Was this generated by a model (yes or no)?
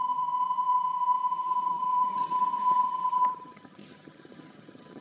yes